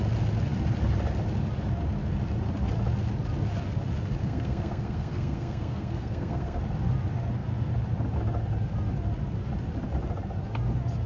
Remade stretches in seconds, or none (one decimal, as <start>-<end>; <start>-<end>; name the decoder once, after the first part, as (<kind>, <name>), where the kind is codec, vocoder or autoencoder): 4.2-6.6 (codec, SNAC)